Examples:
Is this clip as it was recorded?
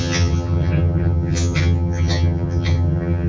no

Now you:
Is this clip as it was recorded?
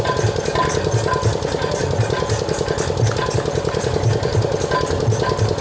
yes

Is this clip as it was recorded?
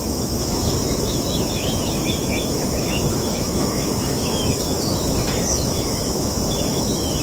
no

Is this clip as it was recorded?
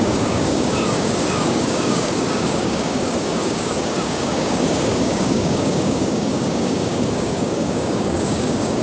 no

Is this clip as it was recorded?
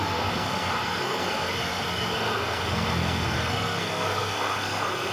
no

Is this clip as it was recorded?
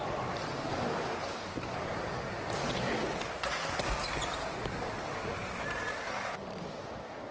yes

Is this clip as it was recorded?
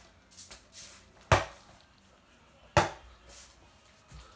yes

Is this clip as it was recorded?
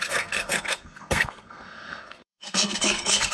no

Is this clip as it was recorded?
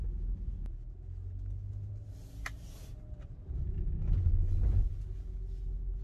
yes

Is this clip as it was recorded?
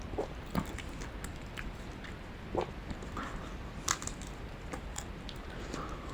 yes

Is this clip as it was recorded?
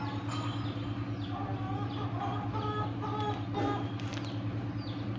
yes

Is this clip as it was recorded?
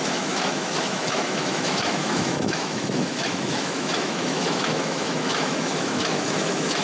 no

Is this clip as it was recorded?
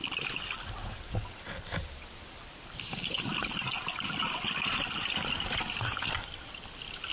yes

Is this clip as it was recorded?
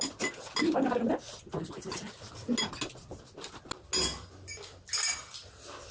yes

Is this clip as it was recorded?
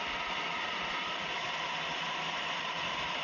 yes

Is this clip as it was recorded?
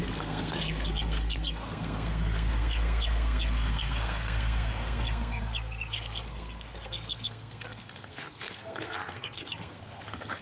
no